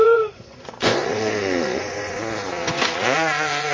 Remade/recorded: remade